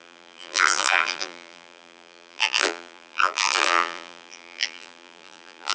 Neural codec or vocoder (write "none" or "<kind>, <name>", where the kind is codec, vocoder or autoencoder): vocoder, BigVGAN v2